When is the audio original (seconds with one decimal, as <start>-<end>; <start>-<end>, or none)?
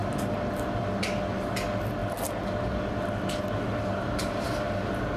0.0-5.2